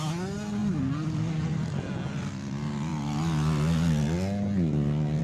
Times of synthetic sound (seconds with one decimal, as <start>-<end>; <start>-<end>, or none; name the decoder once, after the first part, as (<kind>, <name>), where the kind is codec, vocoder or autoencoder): none